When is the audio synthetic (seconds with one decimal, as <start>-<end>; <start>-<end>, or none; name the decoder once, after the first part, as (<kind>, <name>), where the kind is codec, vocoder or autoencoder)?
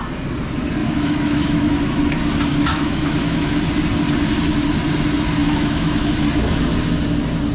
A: 0.8-2.0 (autoencoder, DAC-VAE); 2.5-3.6; 5.4-6.1